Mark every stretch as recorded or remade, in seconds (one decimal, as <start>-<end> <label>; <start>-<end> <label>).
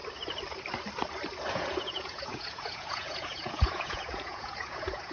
0.0-1.5 recorded; 1.5-5.1 remade